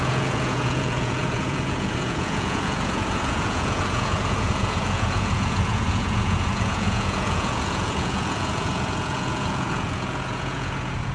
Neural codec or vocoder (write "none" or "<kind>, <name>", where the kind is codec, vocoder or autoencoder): vocoder, Vocos